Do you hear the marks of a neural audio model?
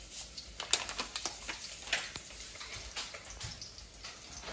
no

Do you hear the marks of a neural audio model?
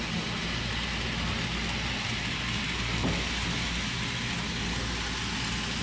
no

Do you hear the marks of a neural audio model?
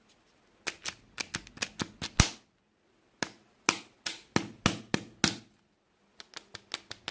no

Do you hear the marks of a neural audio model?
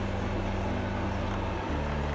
no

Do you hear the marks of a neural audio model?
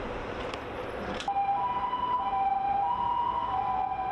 no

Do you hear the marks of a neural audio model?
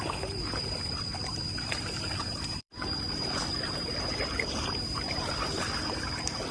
yes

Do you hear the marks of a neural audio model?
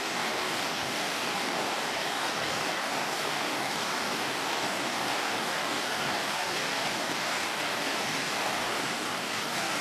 yes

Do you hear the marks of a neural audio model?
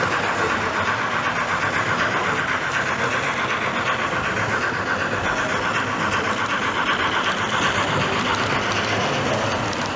no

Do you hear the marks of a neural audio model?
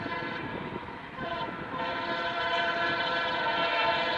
yes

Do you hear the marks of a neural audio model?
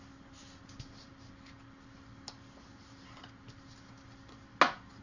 no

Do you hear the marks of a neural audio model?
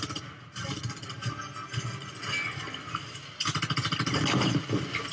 no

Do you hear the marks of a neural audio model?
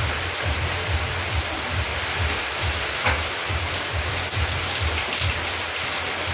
no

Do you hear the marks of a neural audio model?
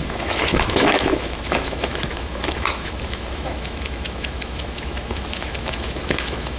yes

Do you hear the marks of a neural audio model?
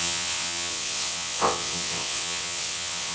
yes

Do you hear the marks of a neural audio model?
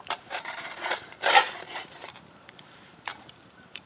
yes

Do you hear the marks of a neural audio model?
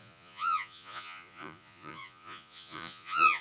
yes